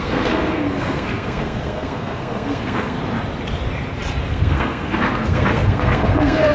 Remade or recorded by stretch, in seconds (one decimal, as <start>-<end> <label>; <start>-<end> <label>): 0.0-3.0 remade; 3.0-4.2 recorded; 4.2-6.5 remade